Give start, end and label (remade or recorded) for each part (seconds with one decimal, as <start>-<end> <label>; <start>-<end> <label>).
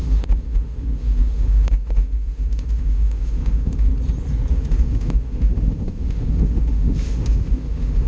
0.0-3.9 remade; 3.9-4.5 recorded; 4.5-8.1 remade